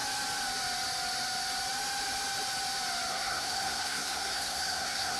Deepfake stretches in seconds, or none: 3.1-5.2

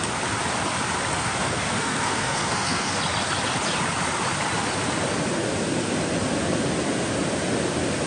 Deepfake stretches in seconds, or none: 1.2-3.0

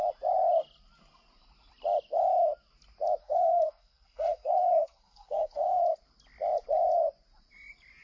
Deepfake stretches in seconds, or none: 3.2-5.8

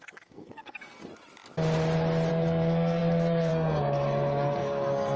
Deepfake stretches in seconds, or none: 0.0-1.1; 2.3-5.2

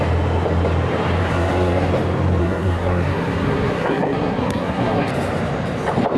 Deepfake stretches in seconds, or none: 1.2-1.9; 2.4-5.1

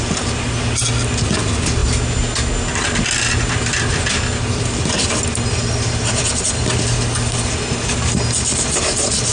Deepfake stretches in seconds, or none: none